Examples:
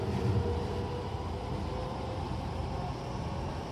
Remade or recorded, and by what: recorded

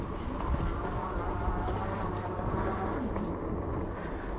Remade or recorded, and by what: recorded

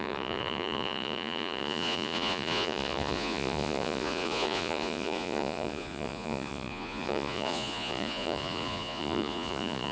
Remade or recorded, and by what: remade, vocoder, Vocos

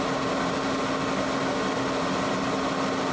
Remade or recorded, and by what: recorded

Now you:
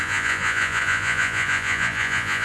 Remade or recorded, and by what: remade, vocoder, Vocos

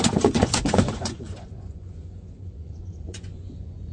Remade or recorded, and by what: remade, vocoder, Vocos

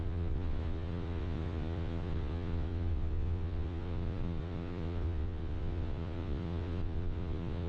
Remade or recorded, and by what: remade, vocoder, Vocos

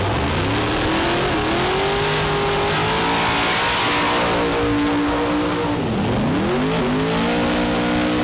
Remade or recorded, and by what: recorded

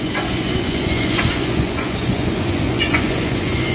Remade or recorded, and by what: remade, vocoder, Vocos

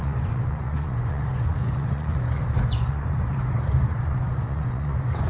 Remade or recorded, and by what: remade, vocoder, Vocos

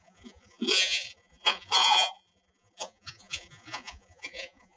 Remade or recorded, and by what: remade, vocoder, Vocos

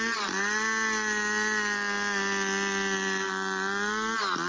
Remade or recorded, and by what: recorded